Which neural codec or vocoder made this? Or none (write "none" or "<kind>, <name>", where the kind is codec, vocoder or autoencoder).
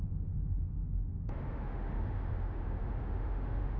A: autoencoder, DAC-VAE